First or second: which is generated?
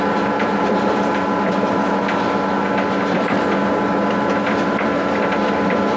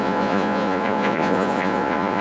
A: second